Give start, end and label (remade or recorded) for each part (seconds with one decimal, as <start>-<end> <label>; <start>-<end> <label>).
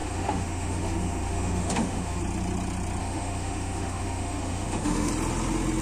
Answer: 0.0-2.2 remade; 2.2-3.0 recorded; 3.0-5.1 remade; 5.1-5.8 recorded